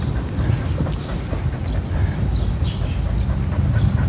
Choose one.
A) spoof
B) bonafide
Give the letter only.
B